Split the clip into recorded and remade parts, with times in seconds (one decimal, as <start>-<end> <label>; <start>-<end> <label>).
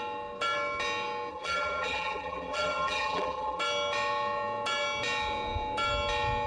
0.0-1.3 recorded; 1.3-3.6 remade; 3.6-6.5 recorded